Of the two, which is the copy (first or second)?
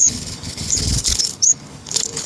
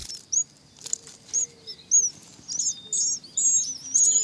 first